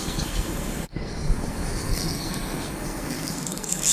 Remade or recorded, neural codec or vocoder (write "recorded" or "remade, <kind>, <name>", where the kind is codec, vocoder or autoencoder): remade, codec, SNAC